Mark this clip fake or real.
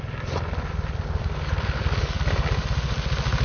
real